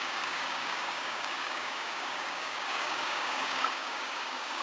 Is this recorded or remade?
remade